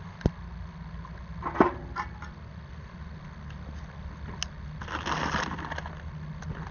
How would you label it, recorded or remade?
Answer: recorded